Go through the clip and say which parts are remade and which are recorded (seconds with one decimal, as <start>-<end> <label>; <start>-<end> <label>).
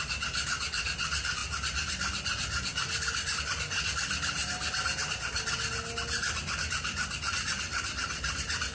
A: 0.0-8.7 recorded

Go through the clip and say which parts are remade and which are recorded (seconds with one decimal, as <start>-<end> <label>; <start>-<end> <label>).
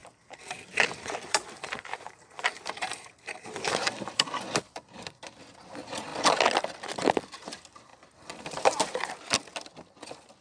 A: 0.0-4.9 remade; 4.9-10.4 recorded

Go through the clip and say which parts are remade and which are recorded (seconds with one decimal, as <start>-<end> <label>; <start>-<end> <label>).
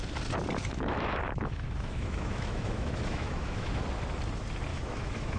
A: 0.0-0.6 recorded; 0.6-3.8 remade; 3.8-4.7 recorded; 4.7-5.4 remade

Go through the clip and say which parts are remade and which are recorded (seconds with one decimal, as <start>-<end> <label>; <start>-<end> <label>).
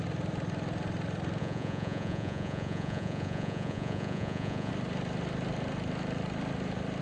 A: 0.0-1.4 recorded; 1.4-4.7 remade; 4.7-7.0 recorded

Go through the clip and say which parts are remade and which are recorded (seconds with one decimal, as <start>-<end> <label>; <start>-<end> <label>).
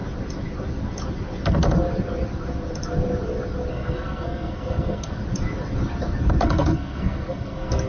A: 0.0-3.7 recorded; 3.7-5.2 remade; 5.2-6.4 recorded; 6.4-7.9 remade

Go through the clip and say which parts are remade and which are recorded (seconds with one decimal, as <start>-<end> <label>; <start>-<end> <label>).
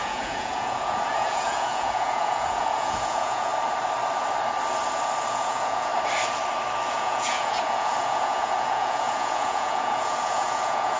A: 0.0-3.5 remade; 3.5-5.3 recorded; 5.3-5.9 remade; 5.9-6.9 recorded; 6.9-11.0 remade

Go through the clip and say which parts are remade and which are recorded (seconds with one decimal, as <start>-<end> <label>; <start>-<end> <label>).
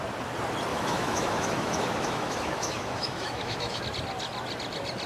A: 0.0-0.7 recorded; 0.7-3.8 remade; 3.8-5.1 recorded